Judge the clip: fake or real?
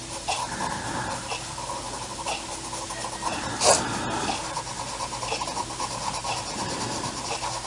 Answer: real